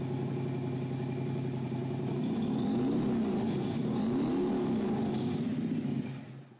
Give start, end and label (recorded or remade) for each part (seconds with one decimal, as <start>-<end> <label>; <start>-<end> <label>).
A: 0.0-6.6 recorded